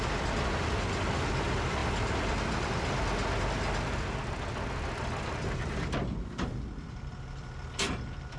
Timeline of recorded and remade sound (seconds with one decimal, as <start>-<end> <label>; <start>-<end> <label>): 0.0-8.4 recorded